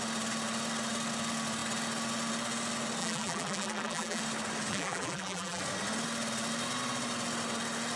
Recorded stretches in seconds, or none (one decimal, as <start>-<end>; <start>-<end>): 0.0-3.0; 4.2-4.7; 5.6-8.0